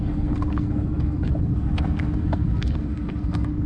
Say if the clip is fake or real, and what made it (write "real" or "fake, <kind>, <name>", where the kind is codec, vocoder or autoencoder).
fake, codec, SNAC